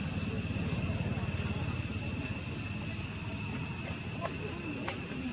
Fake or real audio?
real